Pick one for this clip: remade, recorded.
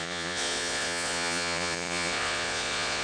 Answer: remade